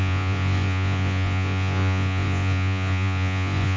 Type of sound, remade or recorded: remade